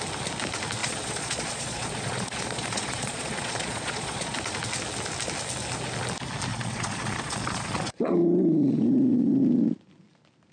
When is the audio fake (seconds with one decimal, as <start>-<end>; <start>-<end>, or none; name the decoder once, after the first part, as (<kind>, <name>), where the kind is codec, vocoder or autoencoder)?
0.8-4.4 (vocoder, Vocos); 6.5-9.4